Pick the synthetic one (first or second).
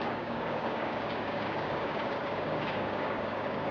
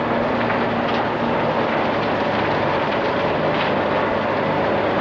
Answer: first